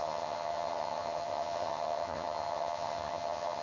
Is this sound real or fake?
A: fake